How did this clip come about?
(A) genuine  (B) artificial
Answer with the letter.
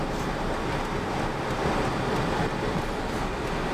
A